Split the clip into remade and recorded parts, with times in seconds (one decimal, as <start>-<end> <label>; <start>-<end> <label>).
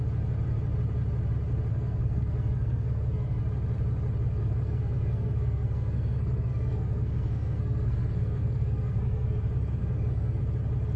0.0-1.7 recorded; 1.7-3.4 remade; 3.4-4.4 recorded; 4.4-9.4 remade; 9.4-9.8 recorded; 9.8-10.4 remade; 10.4-11.0 recorded